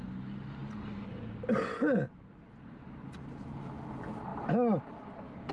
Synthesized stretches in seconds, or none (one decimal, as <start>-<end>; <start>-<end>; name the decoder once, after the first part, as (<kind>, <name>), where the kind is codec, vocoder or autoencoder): none